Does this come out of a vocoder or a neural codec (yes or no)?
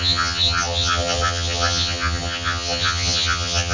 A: yes